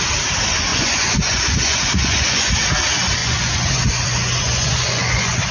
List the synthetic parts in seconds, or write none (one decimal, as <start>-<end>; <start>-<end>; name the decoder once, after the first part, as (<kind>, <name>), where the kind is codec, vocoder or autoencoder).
0.7-2.5 (vocoder, Vocos); 3.2-5.5